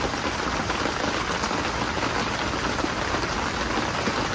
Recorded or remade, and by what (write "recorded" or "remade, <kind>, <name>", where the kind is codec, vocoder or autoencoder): recorded